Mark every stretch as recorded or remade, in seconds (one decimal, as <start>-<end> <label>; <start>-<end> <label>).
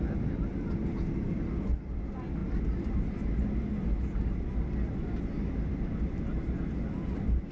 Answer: 0.0-7.5 recorded